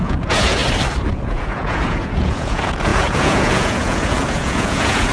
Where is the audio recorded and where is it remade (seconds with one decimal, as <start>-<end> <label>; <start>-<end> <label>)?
0.0-0.6 remade; 0.6-1.1 recorded; 1.1-5.1 remade